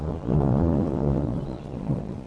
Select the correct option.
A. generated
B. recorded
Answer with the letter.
A